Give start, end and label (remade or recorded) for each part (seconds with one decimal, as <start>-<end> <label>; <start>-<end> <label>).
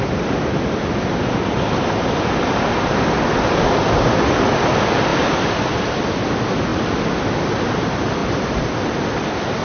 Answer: 0.0-5.1 recorded; 5.1-6.3 remade; 6.3-6.7 recorded; 6.7-7.3 remade; 7.3-8.2 recorded; 8.2-9.0 remade; 9.0-9.6 recorded